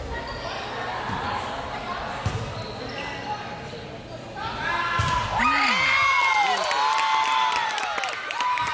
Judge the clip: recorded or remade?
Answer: recorded